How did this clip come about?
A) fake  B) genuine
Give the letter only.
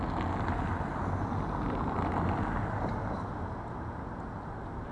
B